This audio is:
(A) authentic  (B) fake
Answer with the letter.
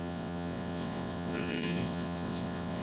B